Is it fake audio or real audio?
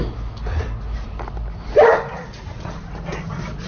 real